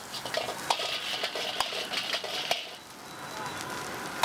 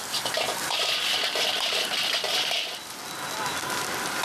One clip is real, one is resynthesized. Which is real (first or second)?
first